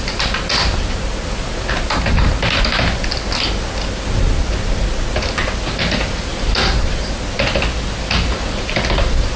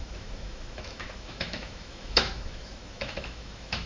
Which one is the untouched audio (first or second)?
first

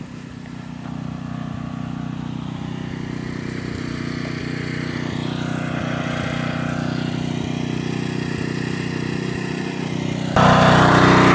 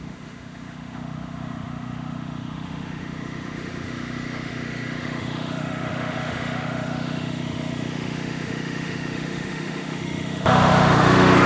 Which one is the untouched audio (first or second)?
first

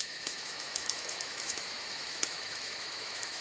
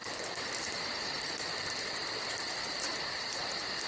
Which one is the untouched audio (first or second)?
second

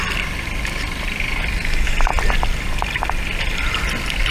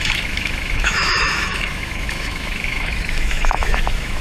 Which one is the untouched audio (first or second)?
first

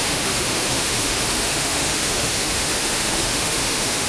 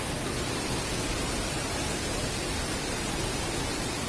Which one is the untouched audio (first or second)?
second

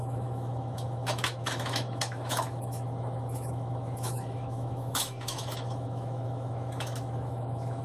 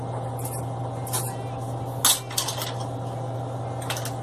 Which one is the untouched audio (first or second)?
second